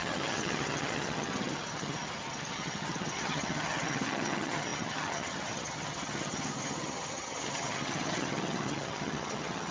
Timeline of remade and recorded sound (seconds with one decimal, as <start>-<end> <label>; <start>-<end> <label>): 0.0-9.7 remade